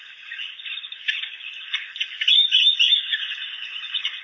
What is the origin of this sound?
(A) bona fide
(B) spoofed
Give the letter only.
A